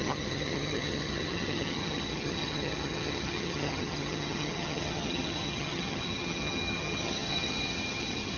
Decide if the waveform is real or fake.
fake